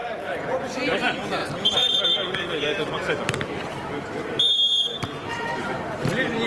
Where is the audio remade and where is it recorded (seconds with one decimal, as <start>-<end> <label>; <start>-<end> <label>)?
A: 0.0-0.6 recorded; 0.6-1.4 remade; 1.4-5.3 recorded; 5.3-6.5 remade